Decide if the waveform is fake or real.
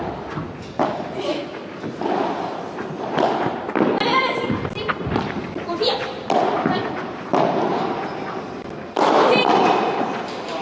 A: real